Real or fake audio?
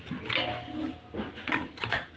real